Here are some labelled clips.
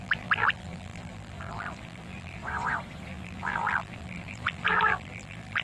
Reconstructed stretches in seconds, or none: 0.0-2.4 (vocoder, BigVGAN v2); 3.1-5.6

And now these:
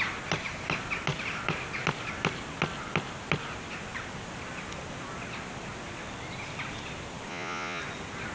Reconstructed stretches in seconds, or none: 7.3-7.8 (vocoder, Vocos)

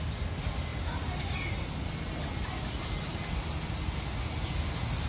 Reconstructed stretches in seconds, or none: none

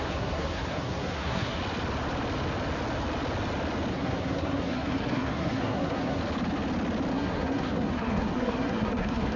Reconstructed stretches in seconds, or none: 0.0-1.6 (codec, SNAC); 3.9-6.2; 7.1-9.4

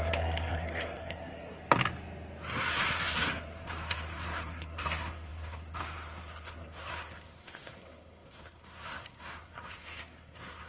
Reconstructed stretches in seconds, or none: 0.0-1.6 (codec, SNAC); 2.7-10.7

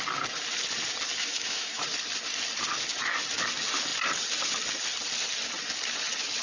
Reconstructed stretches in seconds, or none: 1.2-1.8 (autoencoder, DAC-VAE)

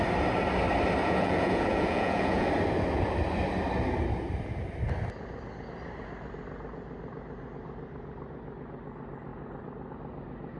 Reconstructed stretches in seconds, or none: 1.0-2.5 (vocoder, Vocos)

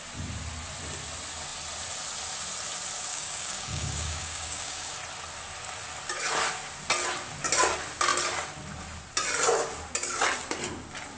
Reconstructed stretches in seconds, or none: 3.1-4.9 (codec, DAC)